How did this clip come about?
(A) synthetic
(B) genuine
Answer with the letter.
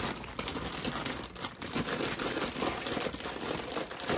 A